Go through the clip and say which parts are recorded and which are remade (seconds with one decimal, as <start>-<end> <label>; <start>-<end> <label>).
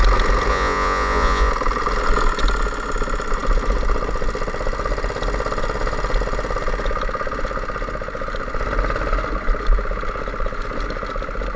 0.0-0.5 recorded; 0.5-1.5 remade; 1.5-11.6 recorded